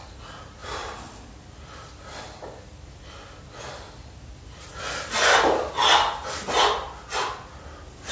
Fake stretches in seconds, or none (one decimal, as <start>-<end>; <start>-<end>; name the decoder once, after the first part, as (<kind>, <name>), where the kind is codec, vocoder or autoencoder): none